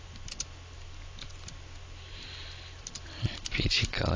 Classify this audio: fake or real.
real